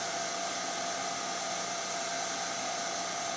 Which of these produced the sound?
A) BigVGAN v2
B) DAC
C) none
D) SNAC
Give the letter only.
A